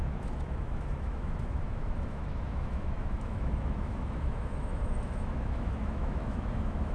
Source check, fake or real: fake